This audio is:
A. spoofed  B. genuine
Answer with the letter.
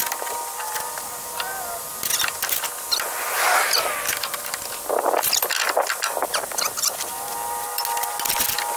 B